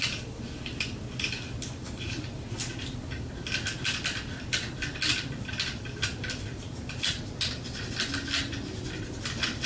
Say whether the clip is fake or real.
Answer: real